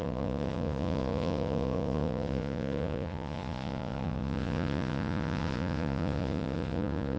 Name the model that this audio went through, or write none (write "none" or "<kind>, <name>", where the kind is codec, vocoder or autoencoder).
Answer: vocoder, Vocos